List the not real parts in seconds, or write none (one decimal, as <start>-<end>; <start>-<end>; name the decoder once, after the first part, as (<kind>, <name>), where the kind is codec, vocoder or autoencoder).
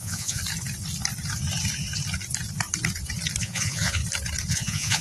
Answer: 0.0-0.4 (vocoder, Vocos); 3.4-4.0; 4.5-5.0